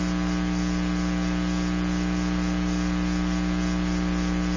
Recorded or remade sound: recorded